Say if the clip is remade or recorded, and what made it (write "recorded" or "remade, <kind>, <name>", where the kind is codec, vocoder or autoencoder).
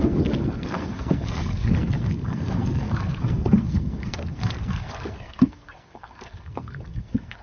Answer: remade, codec, SNAC